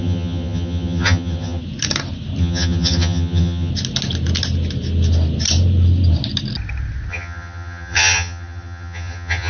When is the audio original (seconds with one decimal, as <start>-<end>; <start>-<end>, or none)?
1.6-2.4; 3.7-7.1